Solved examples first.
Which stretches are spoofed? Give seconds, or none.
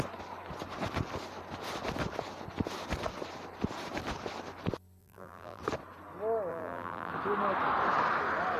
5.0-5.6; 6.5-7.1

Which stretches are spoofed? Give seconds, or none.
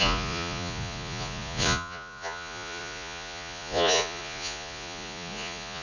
0.0-5.8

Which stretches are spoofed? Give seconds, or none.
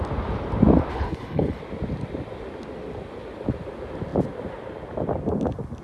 0.9-1.6